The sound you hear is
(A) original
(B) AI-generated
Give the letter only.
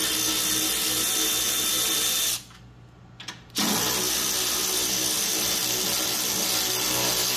A